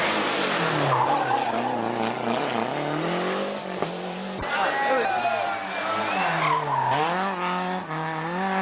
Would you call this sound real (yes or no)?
yes